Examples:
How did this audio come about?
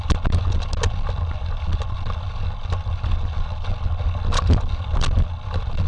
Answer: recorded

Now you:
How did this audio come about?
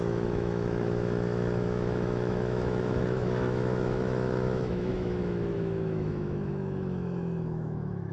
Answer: remade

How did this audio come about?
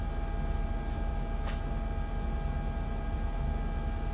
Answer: recorded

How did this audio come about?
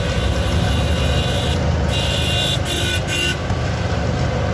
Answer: recorded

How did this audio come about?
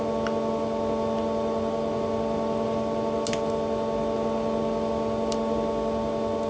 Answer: recorded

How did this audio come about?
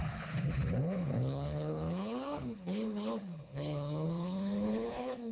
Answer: remade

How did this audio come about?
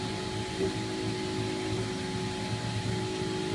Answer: recorded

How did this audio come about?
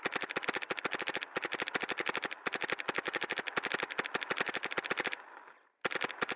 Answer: recorded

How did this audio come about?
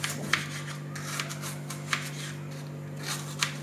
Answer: recorded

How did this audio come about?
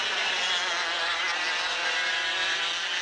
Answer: recorded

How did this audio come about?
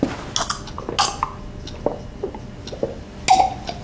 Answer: recorded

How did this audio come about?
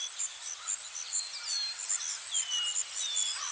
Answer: recorded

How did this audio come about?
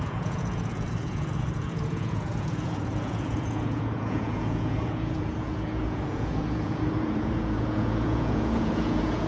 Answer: remade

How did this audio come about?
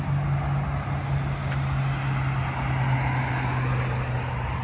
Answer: recorded